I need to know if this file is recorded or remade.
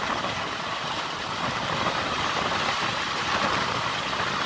recorded